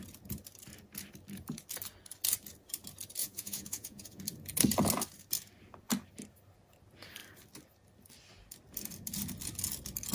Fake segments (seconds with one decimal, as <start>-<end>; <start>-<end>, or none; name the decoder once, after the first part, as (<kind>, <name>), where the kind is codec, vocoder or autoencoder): 3.2-4.2 (vocoder, Vocos)